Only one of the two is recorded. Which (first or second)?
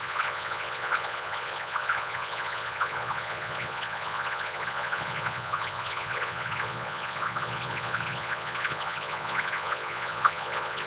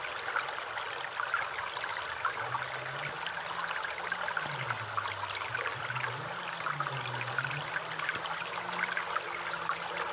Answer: second